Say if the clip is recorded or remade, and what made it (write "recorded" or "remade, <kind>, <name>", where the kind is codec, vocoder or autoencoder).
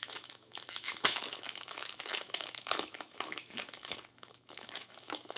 remade, autoencoder, DAC-VAE